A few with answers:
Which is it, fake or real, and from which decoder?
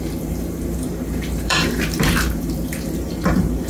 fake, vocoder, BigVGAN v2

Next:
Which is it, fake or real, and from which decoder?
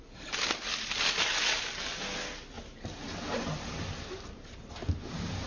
real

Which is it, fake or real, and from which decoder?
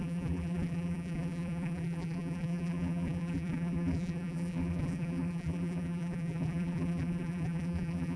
fake, vocoder, BigVGAN v2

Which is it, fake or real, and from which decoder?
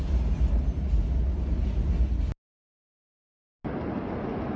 real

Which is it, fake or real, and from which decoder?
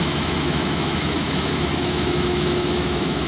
fake, autoencoder, DAC-VAE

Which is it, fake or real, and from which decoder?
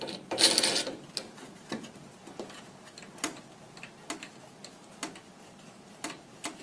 real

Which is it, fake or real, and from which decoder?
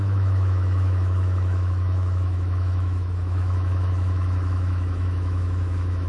fake, autoencoder, DAC-VAE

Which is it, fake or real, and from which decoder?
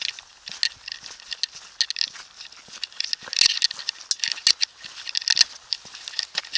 real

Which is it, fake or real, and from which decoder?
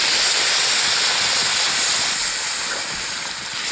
real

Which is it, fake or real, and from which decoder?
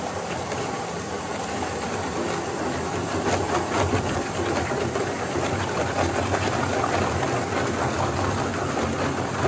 real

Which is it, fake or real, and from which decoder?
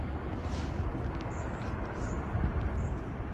real